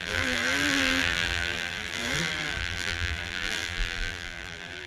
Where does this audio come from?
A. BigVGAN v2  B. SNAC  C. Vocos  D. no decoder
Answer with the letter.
A